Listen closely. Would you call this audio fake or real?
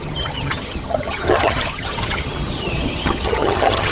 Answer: fake